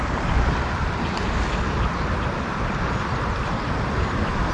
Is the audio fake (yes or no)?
no